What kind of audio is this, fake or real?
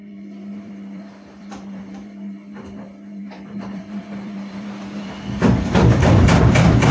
fake